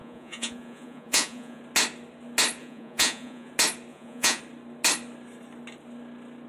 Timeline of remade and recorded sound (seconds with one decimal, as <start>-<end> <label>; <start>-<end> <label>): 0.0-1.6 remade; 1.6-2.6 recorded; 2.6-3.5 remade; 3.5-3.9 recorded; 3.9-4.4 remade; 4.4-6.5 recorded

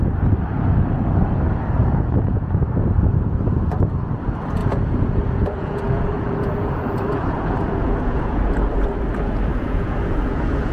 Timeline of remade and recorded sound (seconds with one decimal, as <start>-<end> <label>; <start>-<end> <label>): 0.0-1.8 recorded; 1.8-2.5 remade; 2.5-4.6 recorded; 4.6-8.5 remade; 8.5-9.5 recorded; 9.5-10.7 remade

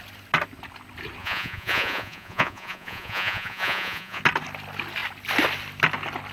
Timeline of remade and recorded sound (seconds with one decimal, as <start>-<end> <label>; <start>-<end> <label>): 0.0-1.2 recorded; 1.2-4.2 remade; 4.2-6.3 recorded